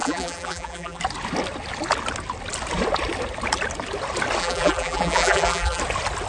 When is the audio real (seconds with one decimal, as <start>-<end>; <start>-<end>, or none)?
1.0-4.4; 5.8-6.3

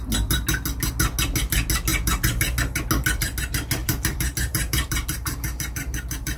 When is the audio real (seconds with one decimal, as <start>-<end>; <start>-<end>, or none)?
0.0-3.8

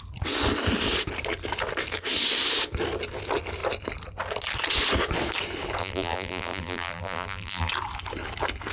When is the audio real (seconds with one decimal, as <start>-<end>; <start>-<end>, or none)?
0.0-5.8; 7.7-8.7

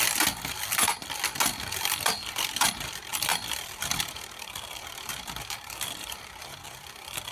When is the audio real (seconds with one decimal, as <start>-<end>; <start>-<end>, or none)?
0.9-1.5